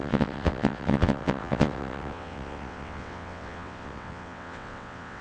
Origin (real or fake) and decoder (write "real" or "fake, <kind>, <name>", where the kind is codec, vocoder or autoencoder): fake, vocoder, WaveNeXt